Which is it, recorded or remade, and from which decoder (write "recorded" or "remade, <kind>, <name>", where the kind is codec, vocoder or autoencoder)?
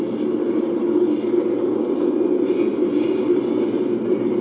recorded